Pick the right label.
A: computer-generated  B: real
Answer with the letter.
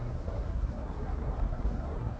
A